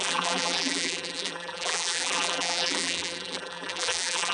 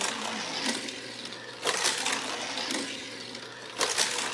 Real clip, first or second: second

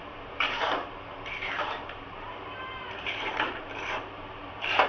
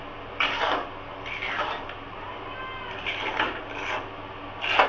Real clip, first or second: second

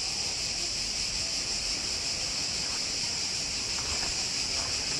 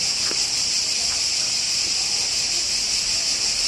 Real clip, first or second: second